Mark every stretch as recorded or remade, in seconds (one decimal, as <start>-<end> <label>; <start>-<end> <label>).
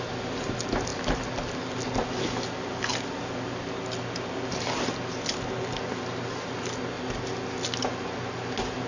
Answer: 0.0-8.9 recorded